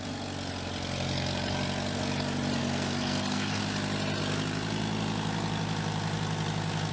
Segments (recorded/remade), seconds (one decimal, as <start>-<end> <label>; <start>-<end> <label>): 0.0-2.6 recorded; 2.6-3.6 remade; 3.6-6.9 recorded